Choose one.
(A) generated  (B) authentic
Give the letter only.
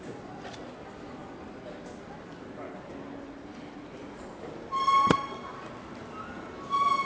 B